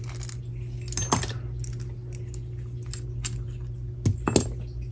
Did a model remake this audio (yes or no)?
no